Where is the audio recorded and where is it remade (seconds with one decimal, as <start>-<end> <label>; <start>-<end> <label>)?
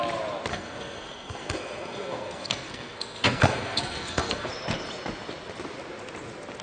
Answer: 0.0-0.5 recorded; 0.5-4.5 remade; 4.5-6.6 recorded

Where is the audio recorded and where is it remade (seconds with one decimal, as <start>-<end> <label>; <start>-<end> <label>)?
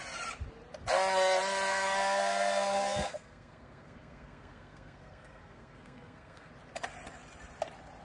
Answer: 0.0-1.7 recorded; 1.7-6.5 remade; 6.5-8.0 recorded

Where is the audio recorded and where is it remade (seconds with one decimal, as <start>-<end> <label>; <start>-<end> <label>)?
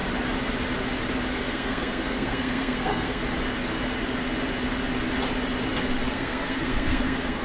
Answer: 0.0-1.3 recorded; 1.3-3.2 remade; 3.2-6.1 recorded; 6.1-7.4 remade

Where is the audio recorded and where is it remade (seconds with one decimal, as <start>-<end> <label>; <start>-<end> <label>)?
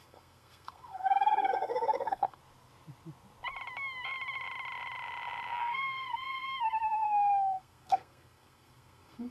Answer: 0.0-2.4 remade; 2.4-5.6 recorded; 5.6-9.3 remade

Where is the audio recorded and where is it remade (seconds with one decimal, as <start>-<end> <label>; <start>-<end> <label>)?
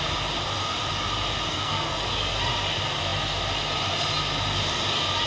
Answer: 0.0-1.5 recorded; 1.5-2.1 remade; 2.1-5.3 recorded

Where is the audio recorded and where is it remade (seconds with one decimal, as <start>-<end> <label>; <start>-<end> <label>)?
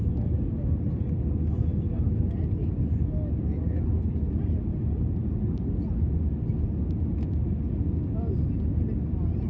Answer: 0.0-9.5 recorded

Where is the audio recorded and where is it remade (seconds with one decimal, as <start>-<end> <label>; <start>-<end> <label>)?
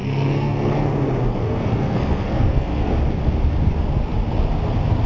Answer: 0.0-0.9 remade; 0.9-1.3 recorded; 1.3-2.9 remade; 2.9-5.1 recorded